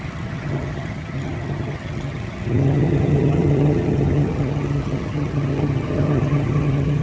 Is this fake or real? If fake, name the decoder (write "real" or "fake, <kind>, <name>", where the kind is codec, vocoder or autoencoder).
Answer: fake, vocoder, HiFi-GAN